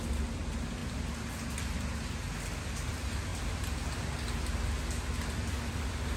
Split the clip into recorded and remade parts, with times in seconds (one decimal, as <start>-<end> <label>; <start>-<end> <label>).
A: 0.0-6.2 recorded